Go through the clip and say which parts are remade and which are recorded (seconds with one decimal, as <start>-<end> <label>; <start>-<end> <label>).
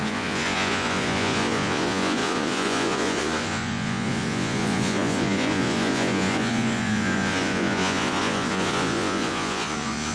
0.0-10.1 remade